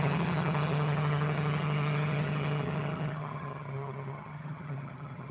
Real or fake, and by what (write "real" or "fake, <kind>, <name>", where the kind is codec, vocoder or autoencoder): fake, vocoder, HiFi-GAN